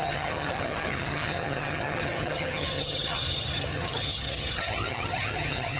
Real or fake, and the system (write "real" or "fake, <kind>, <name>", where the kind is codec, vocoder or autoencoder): fake, vocoder, HiFi-GAN